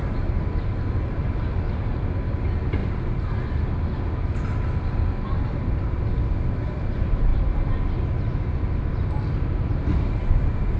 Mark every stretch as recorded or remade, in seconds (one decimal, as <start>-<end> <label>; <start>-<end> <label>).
0.0-10.8 recorded